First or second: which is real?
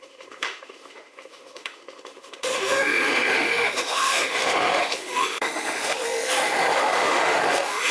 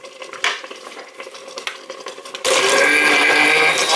second